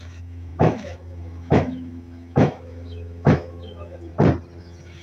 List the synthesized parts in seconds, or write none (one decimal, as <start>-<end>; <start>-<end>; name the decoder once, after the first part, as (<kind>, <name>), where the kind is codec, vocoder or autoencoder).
0.0-4.1 (autoencoder, DAC-VAE); 4.6-5.0

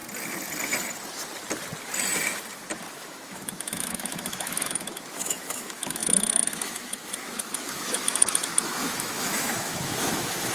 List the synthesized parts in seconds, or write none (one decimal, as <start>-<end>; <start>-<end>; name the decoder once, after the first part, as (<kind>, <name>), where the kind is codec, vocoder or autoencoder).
2.9-10.5 (autoencoder, DAC-VAE)

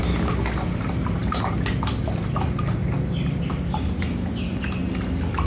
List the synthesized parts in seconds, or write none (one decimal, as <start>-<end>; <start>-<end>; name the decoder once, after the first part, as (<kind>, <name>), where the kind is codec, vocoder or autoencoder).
none

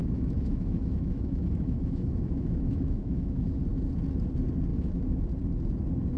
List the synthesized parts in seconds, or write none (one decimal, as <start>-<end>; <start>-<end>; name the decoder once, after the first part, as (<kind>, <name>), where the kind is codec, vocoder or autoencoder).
0.0-3.6 (autoencoder, DAC-VAE); 4.7-5.2

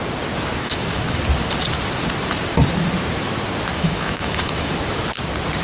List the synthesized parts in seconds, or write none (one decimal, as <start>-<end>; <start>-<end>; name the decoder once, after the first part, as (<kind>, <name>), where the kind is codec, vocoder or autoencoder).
0.6-1.2 (autoencoder, DAC-VAE); 3.7-4.7

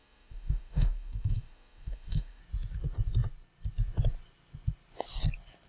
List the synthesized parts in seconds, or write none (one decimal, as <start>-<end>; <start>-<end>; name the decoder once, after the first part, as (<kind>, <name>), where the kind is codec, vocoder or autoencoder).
0.0-2.4 (autoencoder, DAC-VAE)

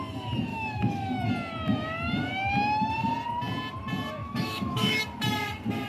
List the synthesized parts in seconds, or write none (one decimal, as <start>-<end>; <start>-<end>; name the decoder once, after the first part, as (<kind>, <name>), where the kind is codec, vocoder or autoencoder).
0.5-1.3 (autoencoder, DAC-VAE); 4.2-5.0